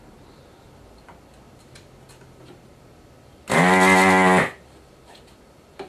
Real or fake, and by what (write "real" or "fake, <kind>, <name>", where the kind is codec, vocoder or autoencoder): real